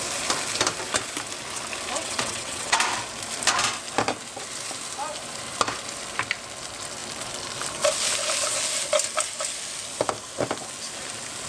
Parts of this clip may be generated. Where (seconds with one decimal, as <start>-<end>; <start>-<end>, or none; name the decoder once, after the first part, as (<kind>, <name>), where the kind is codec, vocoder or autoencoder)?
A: 2.0-2.8 (vocoder, WaveNeXt)